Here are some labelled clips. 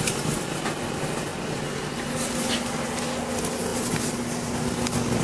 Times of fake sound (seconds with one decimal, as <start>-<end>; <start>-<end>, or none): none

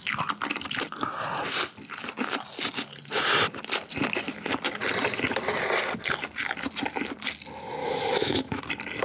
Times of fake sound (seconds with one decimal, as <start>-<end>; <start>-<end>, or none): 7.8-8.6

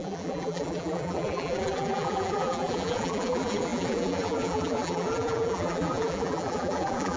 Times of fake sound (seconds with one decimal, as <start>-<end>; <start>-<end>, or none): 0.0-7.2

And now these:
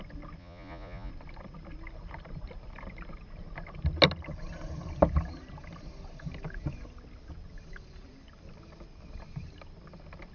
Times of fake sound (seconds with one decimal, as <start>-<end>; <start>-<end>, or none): 0.4-1.1

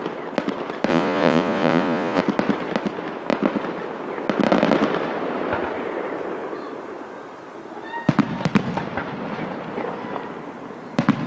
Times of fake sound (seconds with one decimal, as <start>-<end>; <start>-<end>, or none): 0.9-2.2